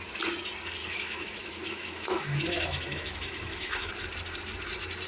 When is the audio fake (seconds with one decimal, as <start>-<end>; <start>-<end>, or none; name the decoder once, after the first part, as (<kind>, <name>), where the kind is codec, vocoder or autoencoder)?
0.8-3.9 (autoencoder, DAC-VAE)